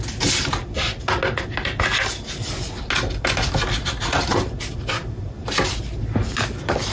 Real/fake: real